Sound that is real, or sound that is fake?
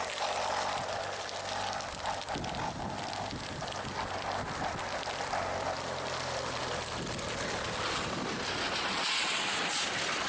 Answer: real